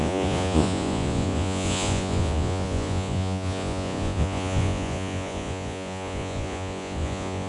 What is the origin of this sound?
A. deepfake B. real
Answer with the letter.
A